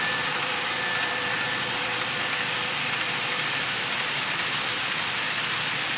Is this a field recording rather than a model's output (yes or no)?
yes